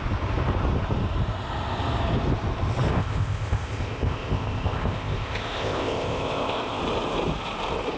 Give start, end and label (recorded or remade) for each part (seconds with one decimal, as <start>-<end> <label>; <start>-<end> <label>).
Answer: 0.0-2.9 recorded; 2.9-6.8 remade; 6.8-8.0 recorded